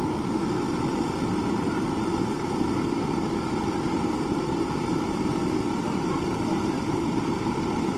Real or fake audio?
real